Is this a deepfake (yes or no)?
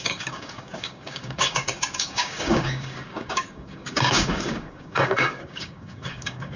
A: yes